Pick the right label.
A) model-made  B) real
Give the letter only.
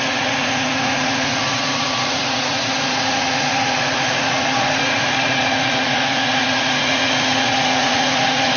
A